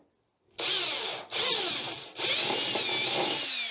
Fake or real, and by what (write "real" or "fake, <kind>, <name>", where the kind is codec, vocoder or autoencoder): real